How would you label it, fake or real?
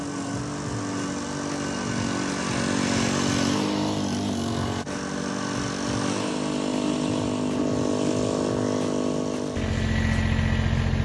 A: real